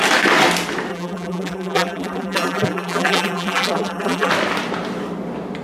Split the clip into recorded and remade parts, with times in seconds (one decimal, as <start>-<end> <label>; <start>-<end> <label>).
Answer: 0.0-0.9 recorded; 0.9-4.3 remade; 4.3-5.6 recorded